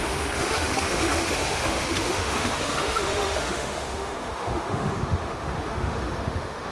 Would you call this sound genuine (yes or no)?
no